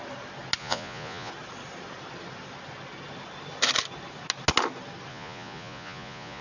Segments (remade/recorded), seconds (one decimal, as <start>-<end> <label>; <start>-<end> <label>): 0.0-0.6 recorded; 0.6-1.3 remade; 1.3-5.1 recorded; 5.1-6.4 remade